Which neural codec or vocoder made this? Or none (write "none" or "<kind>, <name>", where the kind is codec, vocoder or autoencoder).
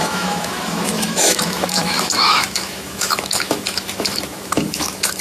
autoencoder, DAC-VAE